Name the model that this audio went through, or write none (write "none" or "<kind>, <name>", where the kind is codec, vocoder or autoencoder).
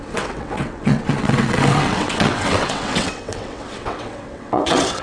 vocoder, WaveNeXt